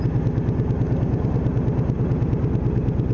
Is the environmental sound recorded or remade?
recorded